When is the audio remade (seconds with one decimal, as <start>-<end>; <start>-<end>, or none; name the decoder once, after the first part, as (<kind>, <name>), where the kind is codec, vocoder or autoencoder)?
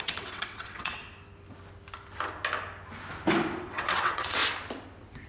0.0-1.0 (vocoder, WaveNeXt); 3.6-4.4